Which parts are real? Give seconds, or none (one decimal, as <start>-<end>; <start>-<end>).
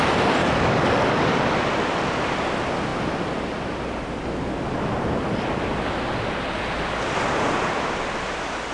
0.0-0.4; 1.4-8.7